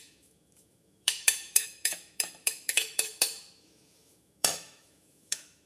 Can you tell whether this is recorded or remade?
remade